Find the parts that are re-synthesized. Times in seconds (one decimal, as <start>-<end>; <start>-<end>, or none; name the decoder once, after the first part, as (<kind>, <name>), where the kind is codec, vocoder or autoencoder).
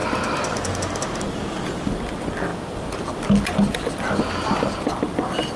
none